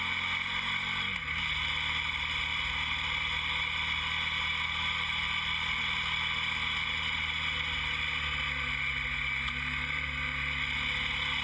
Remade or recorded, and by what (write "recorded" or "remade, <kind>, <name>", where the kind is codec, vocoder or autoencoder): recorded